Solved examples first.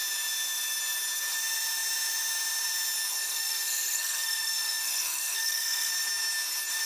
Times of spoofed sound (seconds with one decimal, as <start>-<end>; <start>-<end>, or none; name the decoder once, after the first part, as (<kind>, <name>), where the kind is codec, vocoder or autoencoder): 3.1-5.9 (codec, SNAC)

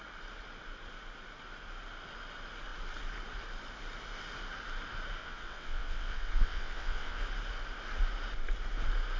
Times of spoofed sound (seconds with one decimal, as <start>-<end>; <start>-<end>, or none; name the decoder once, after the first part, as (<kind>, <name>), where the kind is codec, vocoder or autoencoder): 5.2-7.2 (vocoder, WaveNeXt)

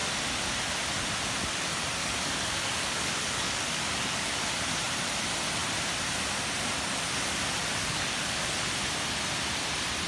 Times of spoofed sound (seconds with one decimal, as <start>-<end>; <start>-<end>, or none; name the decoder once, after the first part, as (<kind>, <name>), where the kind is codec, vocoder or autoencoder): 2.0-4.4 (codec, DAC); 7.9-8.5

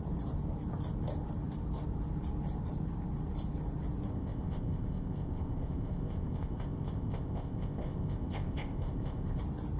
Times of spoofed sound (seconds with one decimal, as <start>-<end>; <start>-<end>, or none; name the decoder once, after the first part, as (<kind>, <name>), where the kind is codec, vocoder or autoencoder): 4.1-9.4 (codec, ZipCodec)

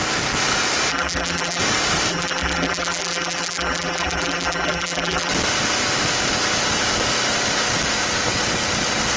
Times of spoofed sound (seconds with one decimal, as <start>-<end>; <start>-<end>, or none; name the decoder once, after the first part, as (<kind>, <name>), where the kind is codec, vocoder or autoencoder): 0.9-1.6 (vocoder, BigVGAN v2); 2.1-5.3